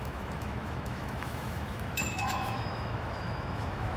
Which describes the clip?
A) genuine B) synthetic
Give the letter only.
B